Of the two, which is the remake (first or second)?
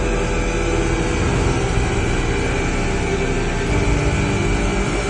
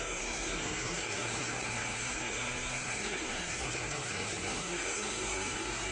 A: second